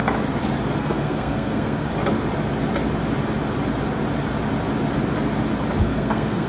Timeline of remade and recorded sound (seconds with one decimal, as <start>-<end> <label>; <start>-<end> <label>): 0.0-0.8 recorded; 0.8-1.9 remade; 1.9-5.8 recorded; 5.8-6.5 remade